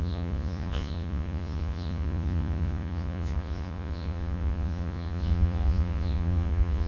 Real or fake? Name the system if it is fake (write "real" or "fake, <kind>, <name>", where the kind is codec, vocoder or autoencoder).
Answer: fake, vocoder, Vocos